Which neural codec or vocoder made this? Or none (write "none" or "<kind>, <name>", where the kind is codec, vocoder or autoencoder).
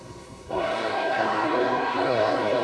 codec, SNAC